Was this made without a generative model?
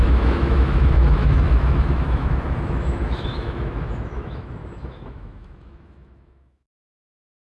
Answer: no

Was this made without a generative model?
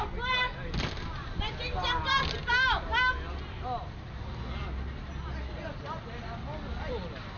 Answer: yes